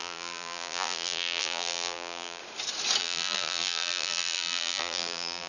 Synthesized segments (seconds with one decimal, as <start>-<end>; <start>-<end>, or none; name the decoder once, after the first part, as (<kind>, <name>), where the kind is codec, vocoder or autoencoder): 0.0-2.4 (vocoder, BigVGAN v2); 3.0-5.5